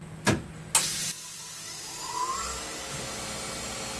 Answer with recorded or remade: recorded